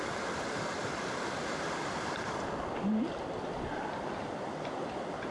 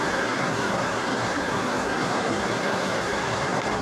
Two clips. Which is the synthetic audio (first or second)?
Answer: second